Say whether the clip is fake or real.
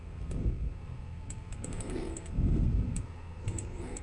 fake